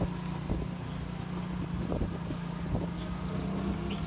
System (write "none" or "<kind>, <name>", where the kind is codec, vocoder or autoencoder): none